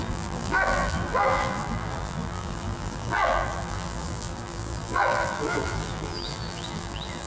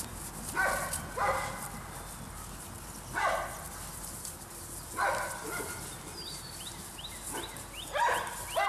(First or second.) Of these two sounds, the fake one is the first